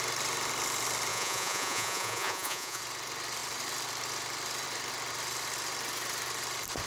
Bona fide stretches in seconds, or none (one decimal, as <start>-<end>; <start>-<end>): 0.0-1.1; 2.8-6.9